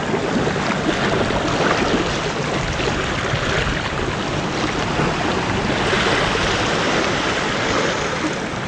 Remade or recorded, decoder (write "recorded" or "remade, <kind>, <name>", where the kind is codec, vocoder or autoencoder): recorded